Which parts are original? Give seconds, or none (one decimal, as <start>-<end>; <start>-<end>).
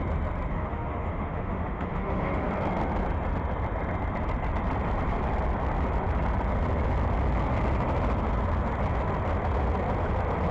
0.0-0.5; 2.5-10.5